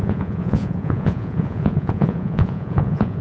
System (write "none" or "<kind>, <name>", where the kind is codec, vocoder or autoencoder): vocoder, Vocos